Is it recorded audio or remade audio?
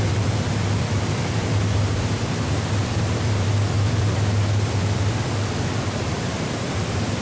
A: remade